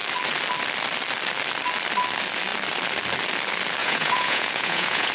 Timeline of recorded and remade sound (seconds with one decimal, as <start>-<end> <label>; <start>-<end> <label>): 0.0-3.8 recorded; 3.8-5.1 remade

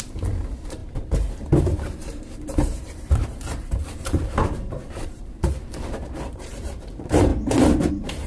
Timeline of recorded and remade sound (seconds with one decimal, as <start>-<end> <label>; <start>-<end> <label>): 0.0-7.3 remade; 7.3-7.9 recorded; 7.9-8.3 remade

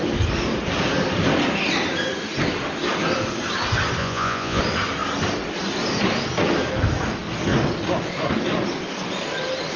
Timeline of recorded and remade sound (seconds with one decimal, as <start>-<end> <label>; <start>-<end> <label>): 0.0-4.0 recorded; 4.0-4.6 remade; 4.6-9.8 recorded

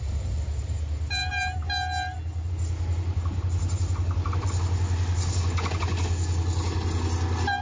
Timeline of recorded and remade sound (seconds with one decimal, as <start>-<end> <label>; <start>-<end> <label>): 0.0-7.6 recorded